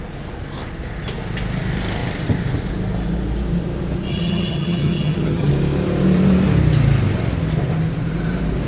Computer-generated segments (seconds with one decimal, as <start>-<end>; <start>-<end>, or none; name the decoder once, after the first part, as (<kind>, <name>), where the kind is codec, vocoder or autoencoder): 4.1-5.5 (vocoder, HiFi-GAN)